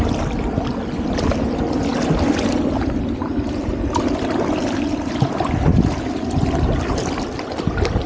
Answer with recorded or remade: recorded